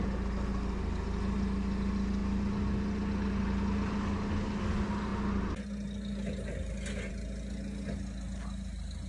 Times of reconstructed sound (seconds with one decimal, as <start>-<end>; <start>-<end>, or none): none